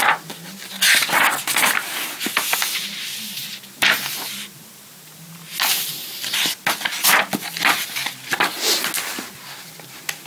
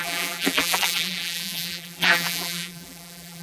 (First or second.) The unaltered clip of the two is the first